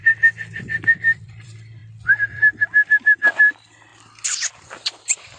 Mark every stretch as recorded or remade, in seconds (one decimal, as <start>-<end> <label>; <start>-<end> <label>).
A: 0.0-1.8 remade; 1.8-3.5 recorded; 3.5-3.9 remade; 3.9-4.6 recorded; 4.6-5.4 remade